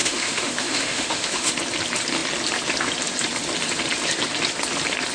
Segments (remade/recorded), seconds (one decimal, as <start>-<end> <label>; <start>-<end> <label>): 0.0-1.5 remade; 1.5-5.1 recorded